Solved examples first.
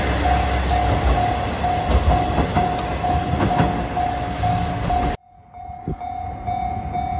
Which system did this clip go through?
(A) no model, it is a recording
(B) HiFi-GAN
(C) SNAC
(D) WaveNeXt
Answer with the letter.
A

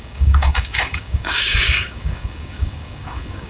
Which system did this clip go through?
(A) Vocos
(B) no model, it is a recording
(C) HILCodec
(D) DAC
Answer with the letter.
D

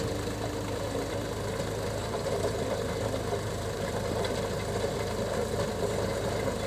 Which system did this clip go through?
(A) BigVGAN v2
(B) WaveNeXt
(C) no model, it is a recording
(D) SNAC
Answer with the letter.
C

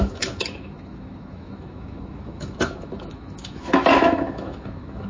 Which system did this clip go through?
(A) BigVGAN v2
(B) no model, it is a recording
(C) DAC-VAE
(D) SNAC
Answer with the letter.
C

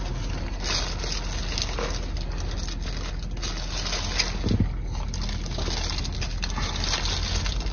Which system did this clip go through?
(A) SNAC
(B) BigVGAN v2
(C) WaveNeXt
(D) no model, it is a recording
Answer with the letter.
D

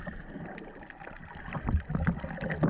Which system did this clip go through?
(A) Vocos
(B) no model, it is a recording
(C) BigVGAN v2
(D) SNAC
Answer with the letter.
B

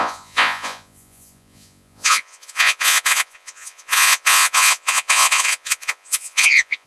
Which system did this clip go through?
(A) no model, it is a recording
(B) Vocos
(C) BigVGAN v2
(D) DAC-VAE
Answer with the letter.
B